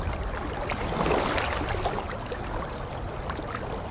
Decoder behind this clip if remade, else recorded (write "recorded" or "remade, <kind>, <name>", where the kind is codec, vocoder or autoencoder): recorded